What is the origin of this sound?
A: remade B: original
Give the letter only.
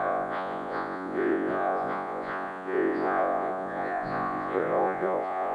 A